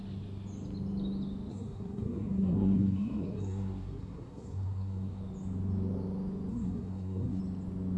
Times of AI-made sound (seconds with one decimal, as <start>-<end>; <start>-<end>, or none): 1.5-5.2; 6.5-7.4